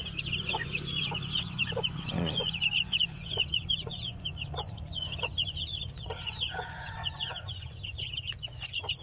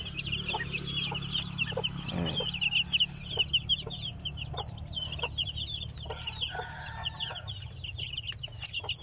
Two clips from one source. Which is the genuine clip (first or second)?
second